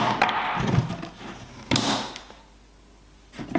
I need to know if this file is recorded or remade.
recorded